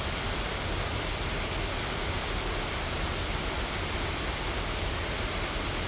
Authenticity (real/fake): real